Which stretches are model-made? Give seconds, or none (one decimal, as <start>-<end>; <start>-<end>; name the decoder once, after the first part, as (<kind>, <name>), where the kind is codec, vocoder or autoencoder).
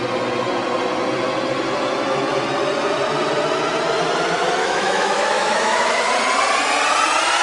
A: 4.6-6.1 (autoencoder, DAC-VAE)